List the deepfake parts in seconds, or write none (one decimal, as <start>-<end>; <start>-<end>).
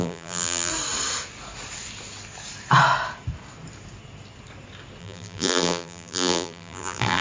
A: 0.0-0.7; 5.0-7.2